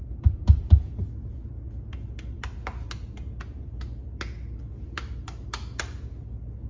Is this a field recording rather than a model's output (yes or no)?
yes